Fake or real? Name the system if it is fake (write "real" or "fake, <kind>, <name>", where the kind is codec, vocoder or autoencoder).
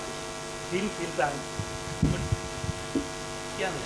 real